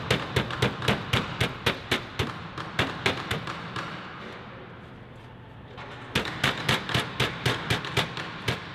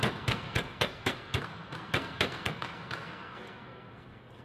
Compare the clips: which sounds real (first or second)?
first